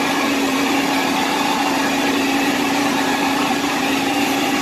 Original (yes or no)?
no